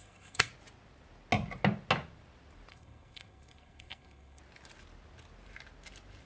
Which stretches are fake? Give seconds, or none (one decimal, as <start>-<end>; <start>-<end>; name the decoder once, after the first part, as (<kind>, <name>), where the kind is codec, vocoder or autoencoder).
0.0-0.5 (codec, SNAC); 2.7-4.4